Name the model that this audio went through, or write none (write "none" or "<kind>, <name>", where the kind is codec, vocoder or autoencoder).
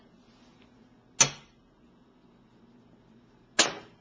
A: none